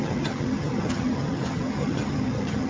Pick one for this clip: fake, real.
fake